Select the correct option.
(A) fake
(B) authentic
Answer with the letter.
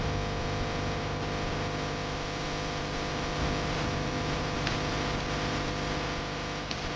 A